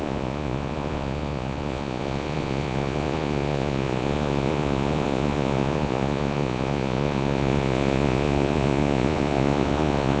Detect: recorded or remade remade